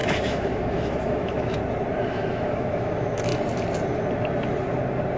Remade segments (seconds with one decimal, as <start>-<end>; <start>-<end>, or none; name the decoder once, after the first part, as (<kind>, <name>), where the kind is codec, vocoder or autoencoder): 0.0-1.6 (autoencoder, DAC-VAE); 2.1-3.3